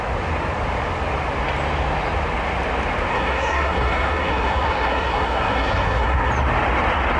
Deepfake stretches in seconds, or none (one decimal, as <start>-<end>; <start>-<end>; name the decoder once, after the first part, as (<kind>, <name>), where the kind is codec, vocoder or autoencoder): 3.1-6.3 (codec, SNAC)